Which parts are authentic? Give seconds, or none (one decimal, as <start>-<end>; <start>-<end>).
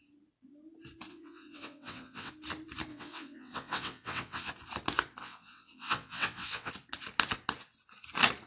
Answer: 0.0-1.1; 2.3-2.9; 4.5-5.2; 6.7-8.5